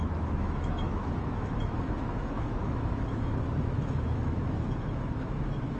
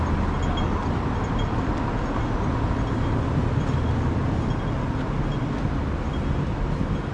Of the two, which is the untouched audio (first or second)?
second